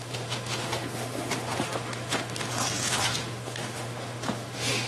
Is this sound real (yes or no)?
no